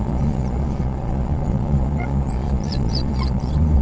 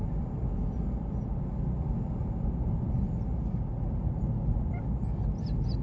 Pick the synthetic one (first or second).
first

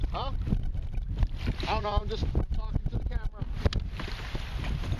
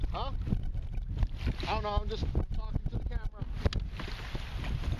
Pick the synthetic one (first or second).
first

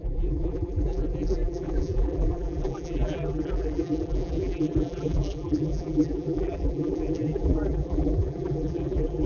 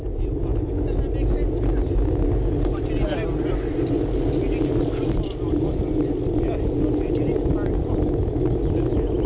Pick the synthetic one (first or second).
first